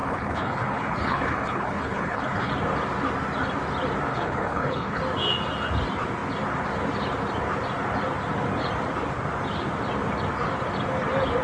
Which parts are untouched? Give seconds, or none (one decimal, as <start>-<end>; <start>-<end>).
2.5-4.1; 5.0-11.4